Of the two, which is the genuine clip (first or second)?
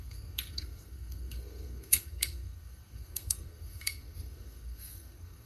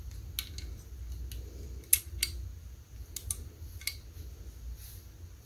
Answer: second